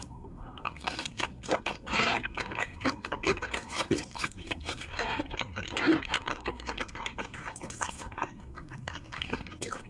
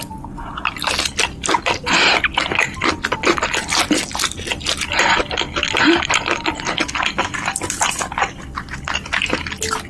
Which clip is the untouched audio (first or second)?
second